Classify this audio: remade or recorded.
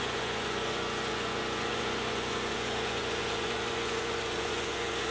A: remade